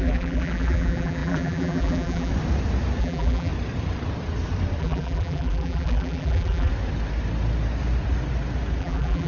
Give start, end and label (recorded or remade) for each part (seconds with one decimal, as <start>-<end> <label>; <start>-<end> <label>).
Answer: 0.0-2.3 remade; 2.3-3.0 recorded; 3.0-3.5 remade; 3.5-4.8 recorded; 4.8-6.7 remade; 6.7-8.8 recorded; 8.8-9.3 remade